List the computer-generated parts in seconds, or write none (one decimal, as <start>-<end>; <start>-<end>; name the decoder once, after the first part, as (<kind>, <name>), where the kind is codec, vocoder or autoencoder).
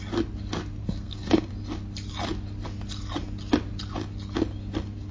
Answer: 0.8-1.5 (codec, SNAC)